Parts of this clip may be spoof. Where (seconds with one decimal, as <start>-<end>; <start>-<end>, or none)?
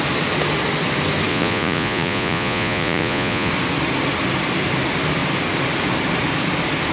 1.3-3.5